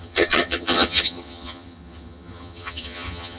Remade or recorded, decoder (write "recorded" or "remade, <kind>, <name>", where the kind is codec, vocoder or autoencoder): remade, vocoder, HiFi-GAN